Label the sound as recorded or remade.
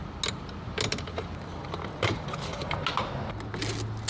recorded